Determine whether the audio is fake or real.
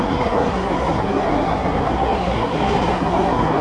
fake